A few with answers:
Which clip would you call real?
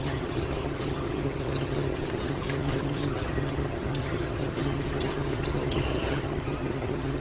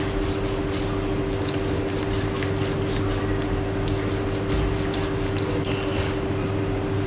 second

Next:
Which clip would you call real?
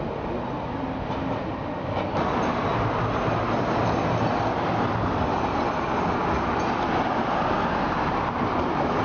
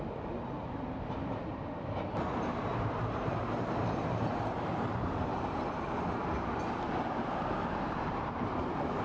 first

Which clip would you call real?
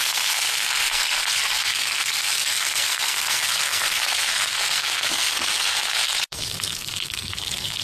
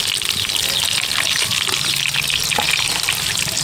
second